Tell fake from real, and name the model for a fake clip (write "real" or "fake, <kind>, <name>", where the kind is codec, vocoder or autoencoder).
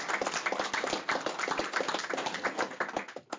real